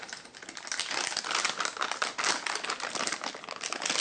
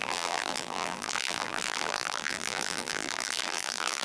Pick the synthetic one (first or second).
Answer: second